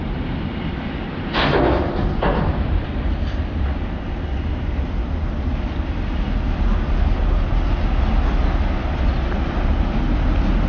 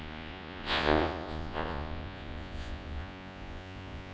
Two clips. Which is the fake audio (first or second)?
second